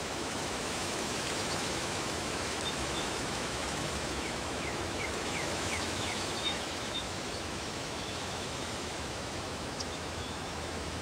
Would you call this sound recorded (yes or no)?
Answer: no